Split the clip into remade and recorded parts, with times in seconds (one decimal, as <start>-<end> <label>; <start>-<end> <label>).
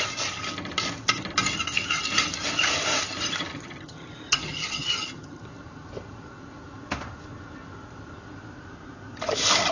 0.0-3.5 recorded; 3.5-5.4 remade; 5.4-9.7 recorded